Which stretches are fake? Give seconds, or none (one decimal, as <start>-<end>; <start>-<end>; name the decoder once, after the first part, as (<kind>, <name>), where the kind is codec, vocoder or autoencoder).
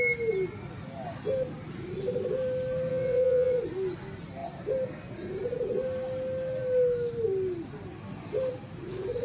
2.9-3.6 (vocoder, WaveNeXt)